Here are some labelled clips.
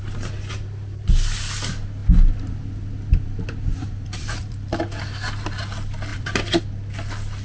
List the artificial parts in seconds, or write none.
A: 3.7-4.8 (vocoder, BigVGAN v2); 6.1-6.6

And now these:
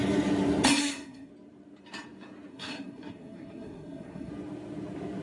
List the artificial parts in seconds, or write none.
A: 0.8-1.3 (codec, SNAC); 2.5-4.3

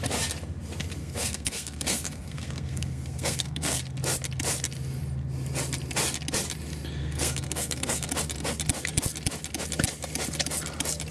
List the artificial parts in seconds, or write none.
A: 1.0-3.8 (codec, SNAC); 7.0-8.1

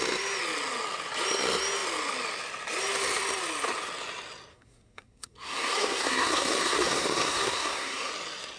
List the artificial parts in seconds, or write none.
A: 4.5-8.1 (codec, SNAC)

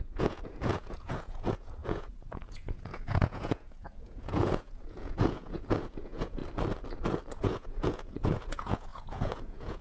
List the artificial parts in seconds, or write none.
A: 0.0-6.4 (vocoder, Vocos); 7.4-9.8

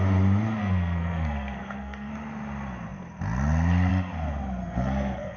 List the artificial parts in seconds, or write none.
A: 0.6-2.1 (codec, SNAC); 4.6-5.4

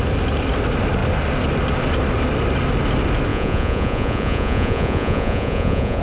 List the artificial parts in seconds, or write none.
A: 3.3-6.0 (vocoder, Vocos)